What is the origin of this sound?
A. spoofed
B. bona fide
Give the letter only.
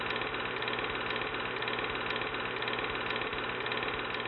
B